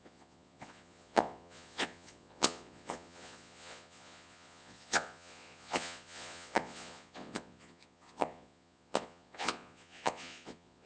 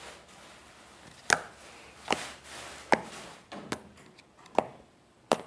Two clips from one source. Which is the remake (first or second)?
first